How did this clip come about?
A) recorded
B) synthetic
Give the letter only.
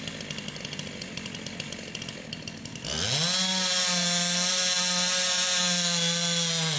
A